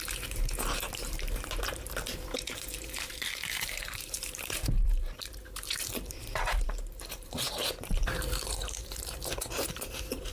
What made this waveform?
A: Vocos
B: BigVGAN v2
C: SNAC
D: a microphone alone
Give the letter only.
B